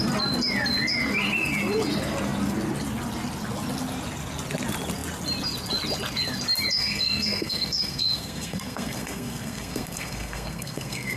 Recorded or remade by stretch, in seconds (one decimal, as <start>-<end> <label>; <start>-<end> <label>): 0.0-6.8 recorded; 6.8-11.2 remade